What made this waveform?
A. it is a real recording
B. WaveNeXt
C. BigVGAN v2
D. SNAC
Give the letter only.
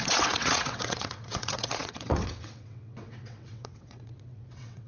B